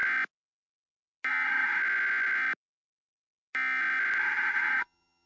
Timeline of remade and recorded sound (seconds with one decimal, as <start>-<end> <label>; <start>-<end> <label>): 0.0-1.3 recorded; 1.3-1.8 remade; 1.8-4.2 recorded; 4.2-5.3 remade

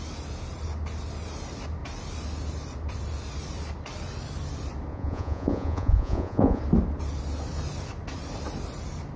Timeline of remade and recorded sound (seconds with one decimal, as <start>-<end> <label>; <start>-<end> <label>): 0.0-4.9 recorded; 4.9-6.6 remade; 6.6-9.2 recorded